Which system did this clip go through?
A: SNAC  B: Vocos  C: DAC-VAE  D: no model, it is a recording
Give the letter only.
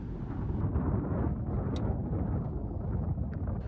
D